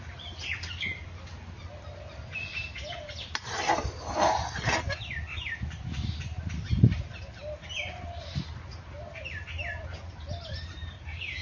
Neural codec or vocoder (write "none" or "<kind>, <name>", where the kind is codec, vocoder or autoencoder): none